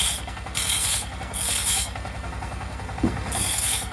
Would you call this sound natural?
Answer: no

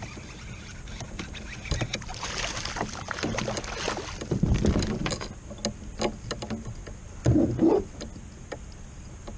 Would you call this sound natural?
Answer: yes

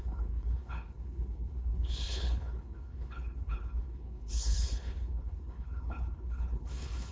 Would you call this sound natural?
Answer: no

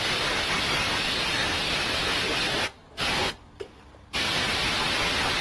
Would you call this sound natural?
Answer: yes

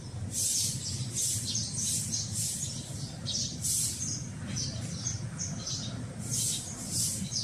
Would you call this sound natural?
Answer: yes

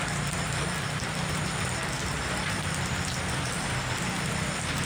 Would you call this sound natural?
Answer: yes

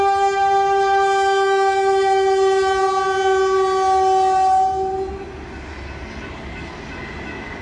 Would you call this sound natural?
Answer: yes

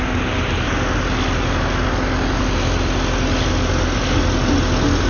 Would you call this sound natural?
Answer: yes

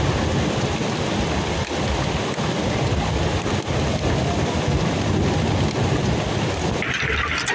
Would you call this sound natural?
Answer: yes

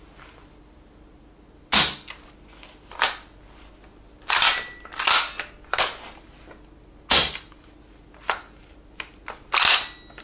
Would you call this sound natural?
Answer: yes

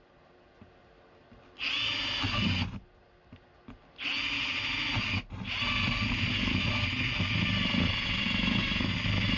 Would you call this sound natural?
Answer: yes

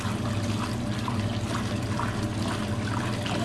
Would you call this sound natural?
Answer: yes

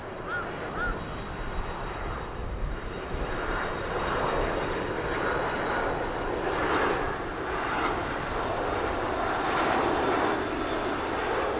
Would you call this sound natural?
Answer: yes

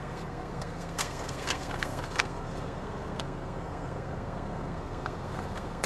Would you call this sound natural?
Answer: no